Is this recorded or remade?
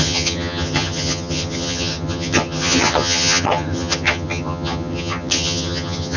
remade